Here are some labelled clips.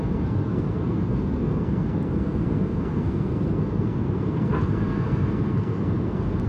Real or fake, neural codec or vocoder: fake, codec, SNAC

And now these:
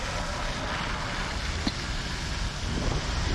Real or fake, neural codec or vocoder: real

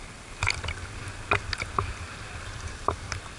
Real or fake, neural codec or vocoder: real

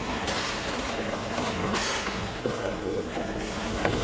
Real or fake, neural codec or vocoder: fake, codec, SNAC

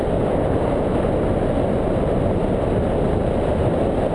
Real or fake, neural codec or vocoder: real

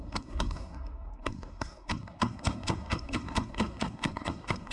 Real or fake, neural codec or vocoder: fake, codec, SNAC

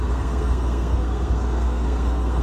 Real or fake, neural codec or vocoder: fake, codec, SNAC